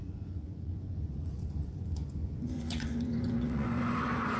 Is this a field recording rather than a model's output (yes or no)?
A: no